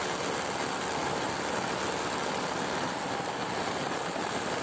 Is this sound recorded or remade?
recorded